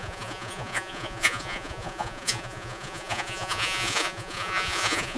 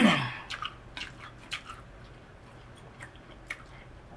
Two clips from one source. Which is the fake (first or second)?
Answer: first